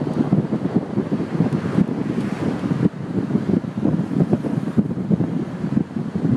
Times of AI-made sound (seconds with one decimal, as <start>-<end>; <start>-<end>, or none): 3.3-6.0